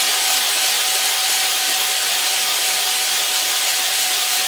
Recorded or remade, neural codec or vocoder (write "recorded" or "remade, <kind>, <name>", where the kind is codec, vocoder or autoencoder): recorded